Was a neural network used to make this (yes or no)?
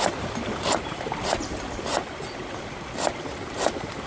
no